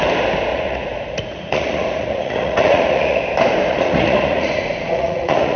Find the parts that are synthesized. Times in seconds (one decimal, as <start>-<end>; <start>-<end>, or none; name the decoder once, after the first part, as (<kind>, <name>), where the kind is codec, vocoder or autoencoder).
0.5-3.2 (vocoder, Vocos); 3.7-5.6